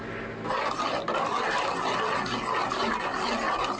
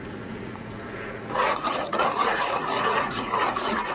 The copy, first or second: second